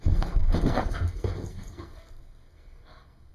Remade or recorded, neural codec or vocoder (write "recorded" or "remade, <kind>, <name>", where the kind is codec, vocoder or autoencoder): remade, codec, SNAC